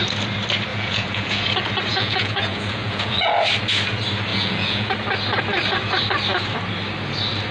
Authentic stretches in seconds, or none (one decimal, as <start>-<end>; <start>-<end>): 0.0-0.7; 1.5-1.9; 3.5-4.3; 4.9-7.5